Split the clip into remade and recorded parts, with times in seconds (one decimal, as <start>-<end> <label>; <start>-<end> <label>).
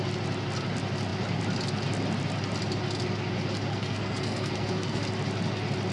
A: 0.0-3.7 recorded; 3.7-5.0 remade; 5.0-5.9 recorded